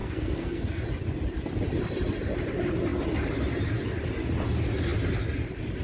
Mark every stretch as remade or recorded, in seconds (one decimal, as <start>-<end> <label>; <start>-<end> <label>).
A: 0.0-0.8 remade; 0.8-5.8 recorded